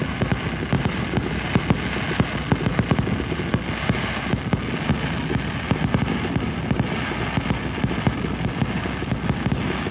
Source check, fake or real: real